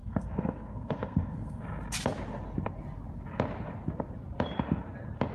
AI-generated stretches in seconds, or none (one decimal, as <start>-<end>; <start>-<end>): 0.0-1.6